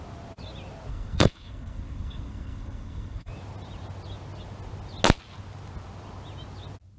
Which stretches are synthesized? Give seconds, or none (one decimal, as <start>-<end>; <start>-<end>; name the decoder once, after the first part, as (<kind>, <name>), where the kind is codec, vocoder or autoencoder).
0.9-3.3 (codec, SNAC)